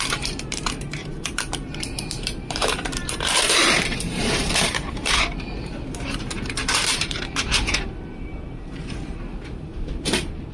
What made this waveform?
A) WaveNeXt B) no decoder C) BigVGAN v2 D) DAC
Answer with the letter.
C